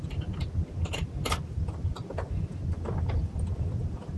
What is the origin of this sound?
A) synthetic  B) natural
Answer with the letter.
B